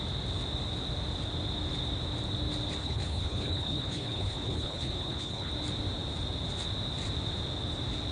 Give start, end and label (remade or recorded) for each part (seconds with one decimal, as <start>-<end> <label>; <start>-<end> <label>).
0.0-2.8 recorded; 2.8-5.5 remade; 5.5-8.1 recorded